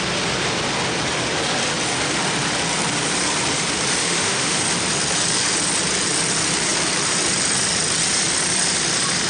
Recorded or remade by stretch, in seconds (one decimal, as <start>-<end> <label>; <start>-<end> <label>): 0.0-4.0 recorded; 4.0-4.6 remade; 4.6-9.3 recorded